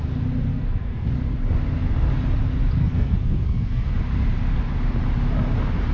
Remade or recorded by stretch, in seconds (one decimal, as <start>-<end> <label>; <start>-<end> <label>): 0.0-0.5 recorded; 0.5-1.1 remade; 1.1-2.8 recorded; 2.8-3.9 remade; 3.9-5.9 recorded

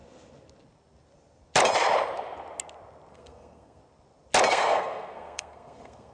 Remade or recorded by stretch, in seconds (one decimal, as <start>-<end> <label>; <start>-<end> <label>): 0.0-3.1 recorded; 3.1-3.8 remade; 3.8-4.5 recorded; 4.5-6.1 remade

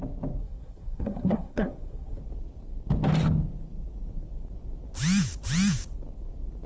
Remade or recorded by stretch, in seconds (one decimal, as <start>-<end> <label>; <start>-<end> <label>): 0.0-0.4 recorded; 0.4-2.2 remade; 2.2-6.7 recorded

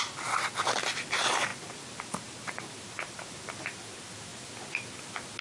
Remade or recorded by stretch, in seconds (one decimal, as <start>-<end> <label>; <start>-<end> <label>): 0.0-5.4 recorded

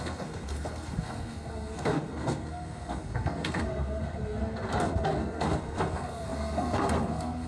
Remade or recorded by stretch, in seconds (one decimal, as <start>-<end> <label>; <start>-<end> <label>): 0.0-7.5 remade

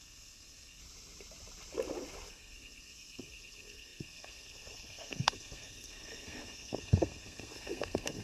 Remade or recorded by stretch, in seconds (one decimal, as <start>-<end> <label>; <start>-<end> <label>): 0.0-0.8 remade; 0.8-2.3 recorded; 2.3-8.2 remade